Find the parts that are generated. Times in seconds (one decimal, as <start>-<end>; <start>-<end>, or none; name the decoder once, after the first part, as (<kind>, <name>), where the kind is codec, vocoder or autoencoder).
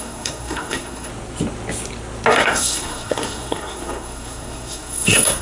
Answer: 0.0-1.1 (codec, SNAC); 2.3-5.4